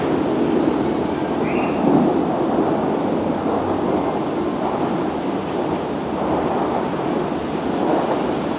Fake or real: real